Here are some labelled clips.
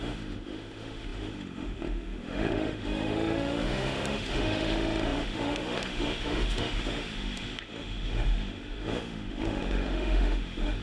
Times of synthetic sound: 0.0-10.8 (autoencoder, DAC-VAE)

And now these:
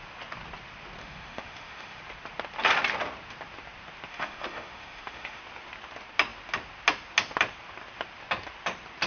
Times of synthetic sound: 1.0-2.0 (autoencoder, DAC-VAE); 4.1-5.4

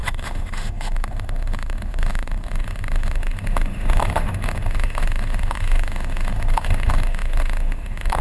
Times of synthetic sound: 0.0-8.2 (autoencoder, DAC-VAE)

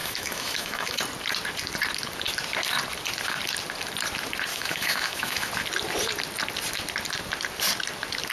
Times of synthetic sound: 0.0-1.0 (autoencoder, DAC-VAE); 4.5-5.5

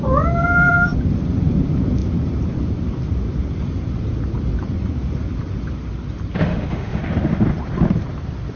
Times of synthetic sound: 6.4-7.0 (autoencoder, DAC-VAE)

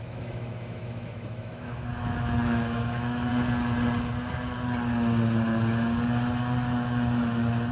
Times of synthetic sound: 0.0-3.3 (autoencoder, DAC-VAE)

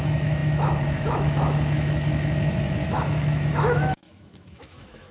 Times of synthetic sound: 0.0-5.1 (autoencoder, DAC-VAE)

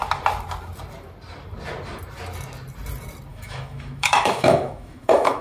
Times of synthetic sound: 3.3-5.4 (autoencoder, DAC-VAE)